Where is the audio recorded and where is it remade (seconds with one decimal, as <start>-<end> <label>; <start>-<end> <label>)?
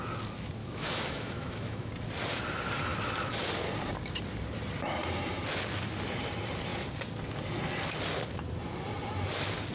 0.0-0.6 recorded; 0.6-1.9 remade; 1.9-9.7 recorded